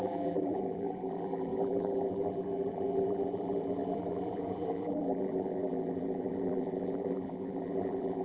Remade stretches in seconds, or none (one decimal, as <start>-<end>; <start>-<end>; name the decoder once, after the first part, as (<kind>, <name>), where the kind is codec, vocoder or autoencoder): 0.0-8.2 (vocoder, BigVGAN v2)